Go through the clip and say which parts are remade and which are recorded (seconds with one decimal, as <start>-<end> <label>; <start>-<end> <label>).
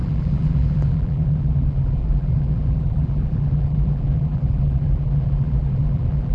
0.0-6.3 remade